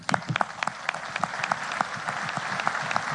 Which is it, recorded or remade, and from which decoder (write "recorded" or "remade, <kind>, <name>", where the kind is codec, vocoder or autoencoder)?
recorded